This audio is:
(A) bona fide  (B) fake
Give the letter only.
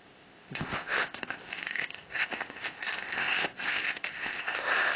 B